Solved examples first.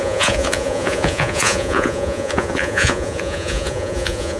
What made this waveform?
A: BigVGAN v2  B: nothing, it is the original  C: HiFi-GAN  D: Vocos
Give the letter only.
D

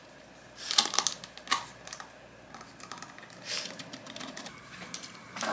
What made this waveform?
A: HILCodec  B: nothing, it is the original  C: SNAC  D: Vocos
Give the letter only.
B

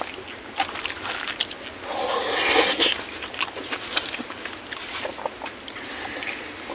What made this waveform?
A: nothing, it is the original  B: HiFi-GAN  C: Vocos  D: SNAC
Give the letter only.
A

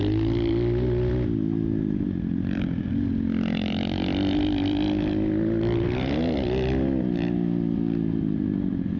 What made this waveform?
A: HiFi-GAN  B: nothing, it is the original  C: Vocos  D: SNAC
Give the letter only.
B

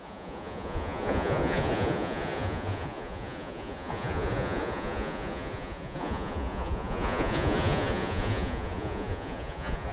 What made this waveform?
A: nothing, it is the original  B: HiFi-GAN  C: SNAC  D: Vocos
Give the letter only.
D